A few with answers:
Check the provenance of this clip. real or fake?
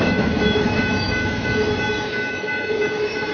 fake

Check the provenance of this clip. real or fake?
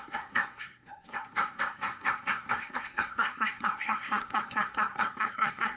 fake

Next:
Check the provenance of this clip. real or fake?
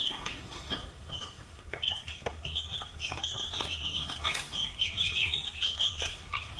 fake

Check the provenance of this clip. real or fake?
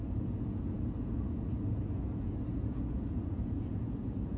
fake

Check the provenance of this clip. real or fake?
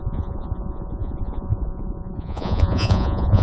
fake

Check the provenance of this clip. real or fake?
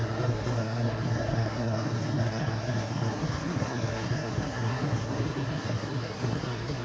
fake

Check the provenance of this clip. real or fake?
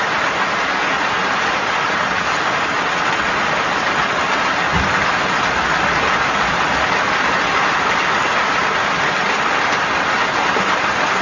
real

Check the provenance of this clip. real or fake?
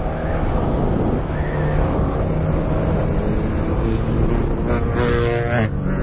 real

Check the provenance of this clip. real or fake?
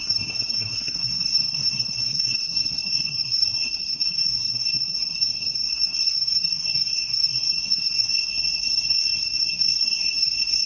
fake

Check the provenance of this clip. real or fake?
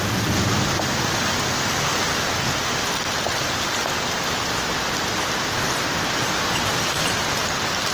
real